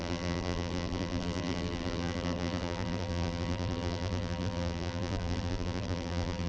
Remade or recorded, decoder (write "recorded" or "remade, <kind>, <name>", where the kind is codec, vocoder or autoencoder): remade, vocoder, BigVGAN v2